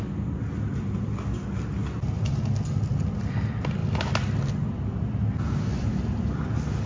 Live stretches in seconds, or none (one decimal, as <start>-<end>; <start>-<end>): 0.0-6.9

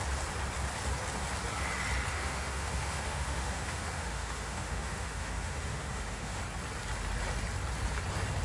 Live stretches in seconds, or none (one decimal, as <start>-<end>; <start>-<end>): 0.0-2.1; 6.4-8.4